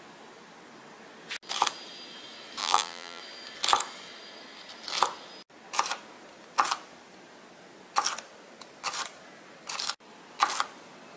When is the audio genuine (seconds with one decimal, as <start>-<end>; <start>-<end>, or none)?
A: 0.0-2.6; 3.2-11.2